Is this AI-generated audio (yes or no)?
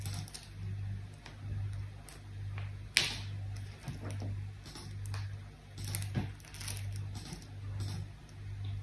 no